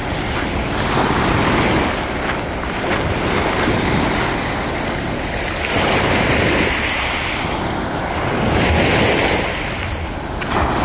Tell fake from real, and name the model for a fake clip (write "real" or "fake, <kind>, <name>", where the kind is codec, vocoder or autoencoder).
real